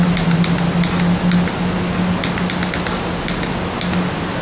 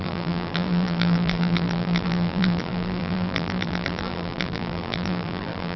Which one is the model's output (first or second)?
second